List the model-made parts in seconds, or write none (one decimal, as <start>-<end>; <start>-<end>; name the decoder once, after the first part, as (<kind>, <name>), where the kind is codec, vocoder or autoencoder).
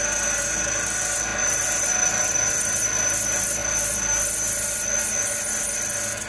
none